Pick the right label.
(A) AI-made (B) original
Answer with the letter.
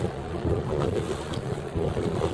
A